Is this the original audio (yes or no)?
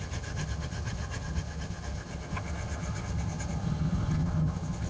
no